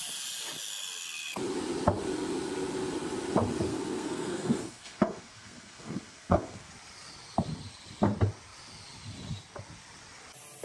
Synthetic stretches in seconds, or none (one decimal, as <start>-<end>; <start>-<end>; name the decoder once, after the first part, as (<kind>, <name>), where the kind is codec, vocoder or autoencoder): 3.7-6.7 (codec, SNAC)